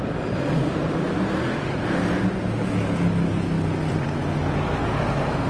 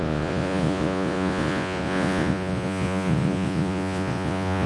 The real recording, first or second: first